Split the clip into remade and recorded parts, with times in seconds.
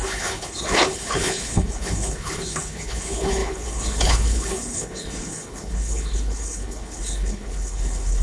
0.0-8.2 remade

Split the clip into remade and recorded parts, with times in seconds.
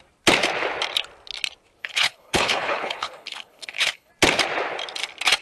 0.0-1.8 recorded; 1.8-4.1 remade; 4.1-5.4 recorded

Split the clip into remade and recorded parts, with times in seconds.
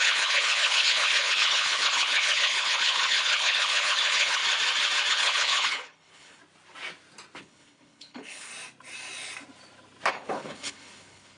0.0-4.4 remade; 4.4-5.1 recorded; 5.1-6.4 remade; 6.4-7.4 recorded; 7.4-8.5 remade; 8.5-10.1 recorded; 10.1-11.4 remade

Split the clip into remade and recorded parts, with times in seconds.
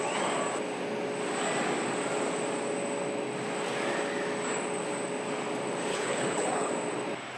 0.0-5.9 recorded; 5.9-6.7 remade; 6.7-7.4 recorded